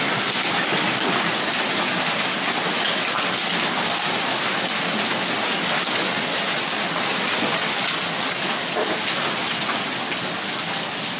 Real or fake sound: real